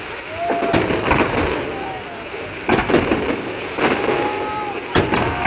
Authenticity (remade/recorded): recorded